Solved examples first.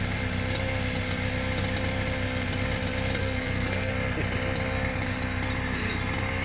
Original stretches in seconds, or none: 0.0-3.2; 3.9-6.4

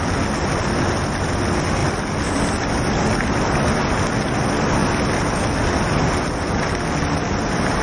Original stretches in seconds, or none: 0.0-1.8; 3.0-4.8; 5.7-7.8

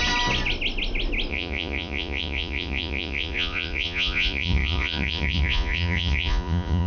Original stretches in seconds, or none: 0.0-1.3